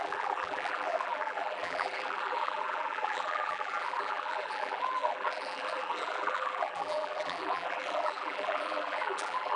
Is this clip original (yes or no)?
no